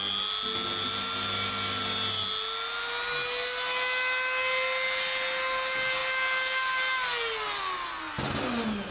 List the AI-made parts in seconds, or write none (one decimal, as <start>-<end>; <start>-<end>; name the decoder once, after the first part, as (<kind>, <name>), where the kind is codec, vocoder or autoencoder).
none